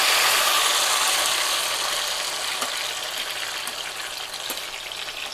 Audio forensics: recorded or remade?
recorded